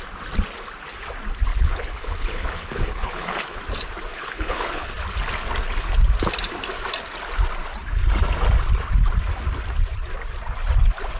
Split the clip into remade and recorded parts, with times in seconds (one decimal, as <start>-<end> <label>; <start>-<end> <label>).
0.0-1.5 recorded; 1.5-3.6 remade; 3.6-4.1 recorded; 4.1-4.9 remade; 4.9-11.2 recorded